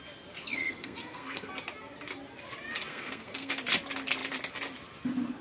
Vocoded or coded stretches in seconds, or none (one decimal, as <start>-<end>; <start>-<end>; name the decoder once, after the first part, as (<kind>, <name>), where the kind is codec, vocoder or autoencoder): 0.5-1.5 (codec, SNAC); 2.9-3.5